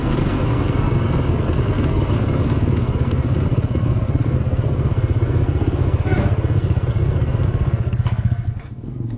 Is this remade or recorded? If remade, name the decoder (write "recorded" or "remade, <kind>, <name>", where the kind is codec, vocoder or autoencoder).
remade, codec, SNAC